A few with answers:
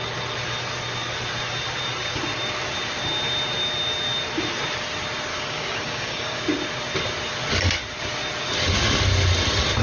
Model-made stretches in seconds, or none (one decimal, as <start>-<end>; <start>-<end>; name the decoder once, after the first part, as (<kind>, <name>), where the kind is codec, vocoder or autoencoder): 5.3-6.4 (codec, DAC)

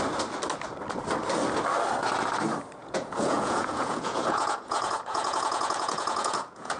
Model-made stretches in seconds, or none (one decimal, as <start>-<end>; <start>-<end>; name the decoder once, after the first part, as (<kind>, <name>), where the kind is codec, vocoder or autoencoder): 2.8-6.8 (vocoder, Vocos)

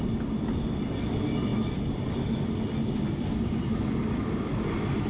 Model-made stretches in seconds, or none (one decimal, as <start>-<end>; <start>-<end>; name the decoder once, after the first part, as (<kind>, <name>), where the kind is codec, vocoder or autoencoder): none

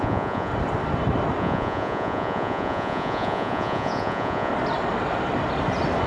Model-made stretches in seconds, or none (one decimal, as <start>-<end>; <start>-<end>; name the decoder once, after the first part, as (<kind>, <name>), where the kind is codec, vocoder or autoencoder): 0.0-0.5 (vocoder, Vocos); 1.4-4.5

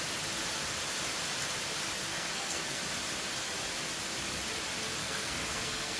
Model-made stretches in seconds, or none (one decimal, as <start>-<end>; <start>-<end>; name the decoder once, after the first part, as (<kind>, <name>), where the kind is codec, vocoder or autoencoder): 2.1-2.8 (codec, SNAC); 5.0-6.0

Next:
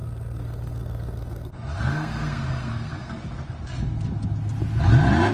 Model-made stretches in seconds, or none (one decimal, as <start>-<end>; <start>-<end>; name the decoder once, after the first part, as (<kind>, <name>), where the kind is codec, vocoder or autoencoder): 0.0-3.2 (codec, SNAC)